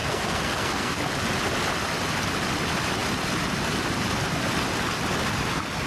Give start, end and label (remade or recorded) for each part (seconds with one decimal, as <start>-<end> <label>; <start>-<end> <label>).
0.0-1.0 remade; 1.0-5.9 recorded